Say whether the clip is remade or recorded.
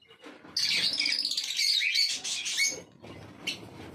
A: recorded